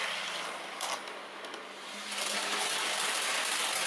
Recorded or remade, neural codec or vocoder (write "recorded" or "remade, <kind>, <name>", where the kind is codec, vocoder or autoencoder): recorded